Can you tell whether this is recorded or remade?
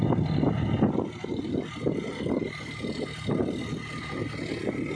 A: recorded